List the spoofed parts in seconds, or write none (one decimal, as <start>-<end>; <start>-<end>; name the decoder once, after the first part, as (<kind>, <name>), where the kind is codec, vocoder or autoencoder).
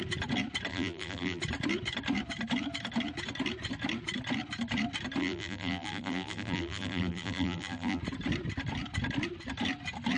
0.7-1.4 (vocoder, BigVGAN v2); 5.2-8.0